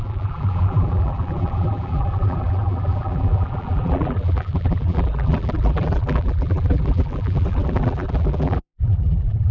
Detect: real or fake fake